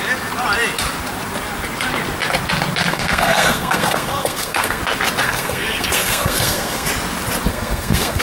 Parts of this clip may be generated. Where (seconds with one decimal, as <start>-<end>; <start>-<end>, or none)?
2.9-4.8; 5.2-6.9; 7.5-8.2

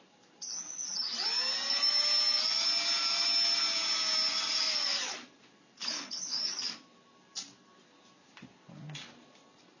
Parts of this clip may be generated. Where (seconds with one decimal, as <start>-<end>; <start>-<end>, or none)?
5.8-6.4

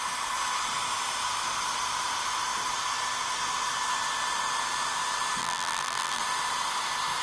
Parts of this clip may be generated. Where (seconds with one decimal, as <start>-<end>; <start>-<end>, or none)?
5.4-6.2